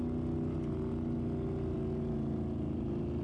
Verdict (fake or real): real